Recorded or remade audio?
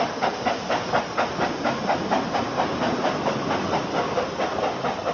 recorded